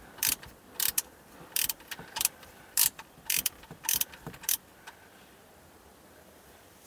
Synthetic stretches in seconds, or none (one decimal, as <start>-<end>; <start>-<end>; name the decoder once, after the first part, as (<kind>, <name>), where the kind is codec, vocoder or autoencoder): 0.0-6.9 (vocoder, BigVGAN v2)